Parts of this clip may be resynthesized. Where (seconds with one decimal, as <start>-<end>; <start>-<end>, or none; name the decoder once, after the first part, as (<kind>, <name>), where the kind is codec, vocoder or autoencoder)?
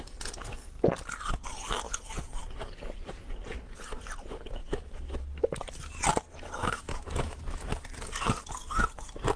4.6-5.2 (autoencoder, DAC-VAE); 6.6-7.4